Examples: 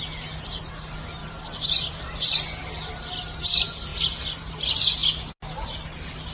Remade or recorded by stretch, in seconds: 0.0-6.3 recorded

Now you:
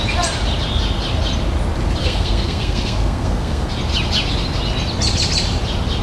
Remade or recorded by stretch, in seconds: 0.0-2.0 recorded; 2.0-3.7 remade; 3.7-6.0 recorded

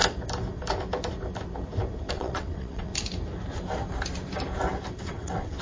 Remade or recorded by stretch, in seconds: 0.0-2.1 recorded; 2.1-2.9 remade; 2.9-5.0 recorded; 5.0-5.6 remade

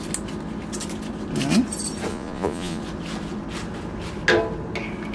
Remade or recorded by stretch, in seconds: 0.0-2.1 recorded; 2.1-2.8 remade; 2.8-5.1 recorded

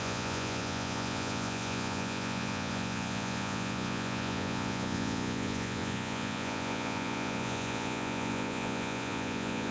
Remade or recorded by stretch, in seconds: 0.0-9.7 remade

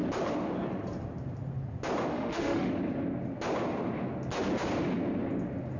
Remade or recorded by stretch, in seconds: 0.0-2.1 recorded; 2.1-2.7 remade; 2.7-5.8 recorded

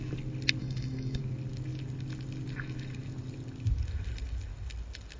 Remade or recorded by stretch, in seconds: 0.0-0.6 recorded; 0.6-1.2 remade; 1.2-5.2 recorded

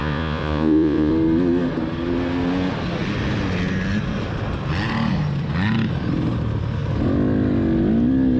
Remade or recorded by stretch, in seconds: 0.0-1.1 remade; 1.1-8.4 recorded